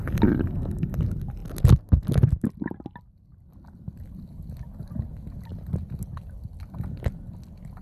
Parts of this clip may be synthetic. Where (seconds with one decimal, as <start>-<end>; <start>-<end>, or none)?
none